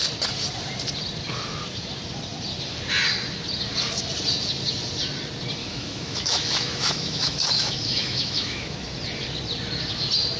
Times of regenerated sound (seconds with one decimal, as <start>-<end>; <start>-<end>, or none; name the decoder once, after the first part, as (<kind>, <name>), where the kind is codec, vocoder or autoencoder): 5.6-8.9 (autoencoder, DAC-VAE)

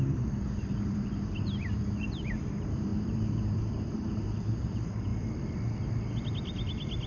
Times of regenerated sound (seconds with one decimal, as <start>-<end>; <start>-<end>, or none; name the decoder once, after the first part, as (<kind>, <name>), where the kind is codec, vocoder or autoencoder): 0.0-5.1 (vocoder, BigVGAN v2)

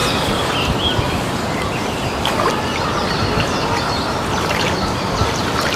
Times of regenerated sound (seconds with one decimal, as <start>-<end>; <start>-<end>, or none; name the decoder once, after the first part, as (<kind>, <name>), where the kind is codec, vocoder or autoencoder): 3.1-5.8 (vocoder, BigVGAN v2)

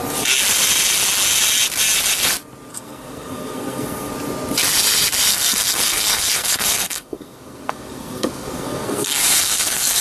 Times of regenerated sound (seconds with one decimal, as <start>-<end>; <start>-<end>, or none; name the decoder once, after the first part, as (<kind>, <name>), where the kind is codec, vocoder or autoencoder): 2.7-4.1 (codec, SNAC); 5.3-10.0

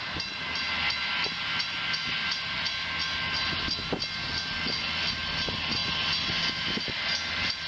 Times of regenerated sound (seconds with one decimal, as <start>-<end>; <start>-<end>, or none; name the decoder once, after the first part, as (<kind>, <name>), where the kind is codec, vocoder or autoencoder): none

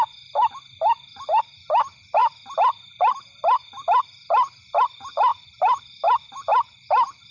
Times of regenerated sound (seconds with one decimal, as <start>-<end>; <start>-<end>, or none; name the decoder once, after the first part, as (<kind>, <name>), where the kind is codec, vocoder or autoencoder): 2.2-3.1 (vocoder, BigVGAN v2); 5.3-5.8

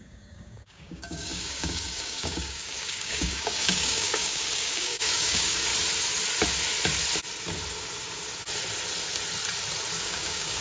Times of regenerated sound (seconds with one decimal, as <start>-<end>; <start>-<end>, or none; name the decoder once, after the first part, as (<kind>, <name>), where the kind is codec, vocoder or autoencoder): 0.0-5.7 (codec, DAC); 10.0-10.6